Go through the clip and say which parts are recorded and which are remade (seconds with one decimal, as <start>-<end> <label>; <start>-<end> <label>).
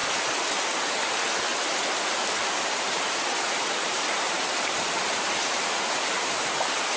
0.0-2.6 recorded; 2.6-7.0 remade